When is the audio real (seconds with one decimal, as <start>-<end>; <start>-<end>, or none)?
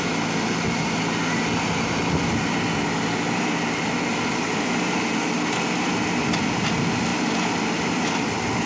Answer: 0.0-8.7